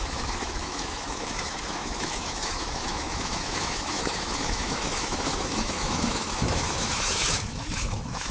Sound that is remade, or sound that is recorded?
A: remade